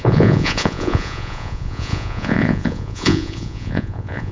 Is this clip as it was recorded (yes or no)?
no